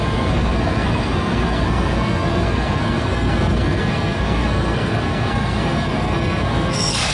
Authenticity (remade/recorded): remade